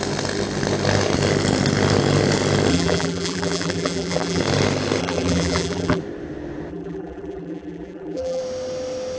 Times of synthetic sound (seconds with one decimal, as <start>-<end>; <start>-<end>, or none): 2.7-4.4; 5.0-6.0; 6.7-8.4